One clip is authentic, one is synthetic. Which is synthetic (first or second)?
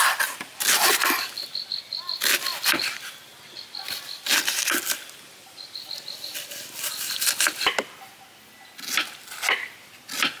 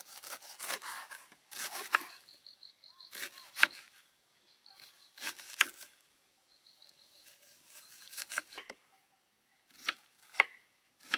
second